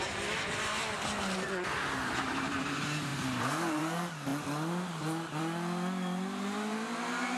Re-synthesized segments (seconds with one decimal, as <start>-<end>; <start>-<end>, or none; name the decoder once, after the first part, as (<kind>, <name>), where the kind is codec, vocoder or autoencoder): none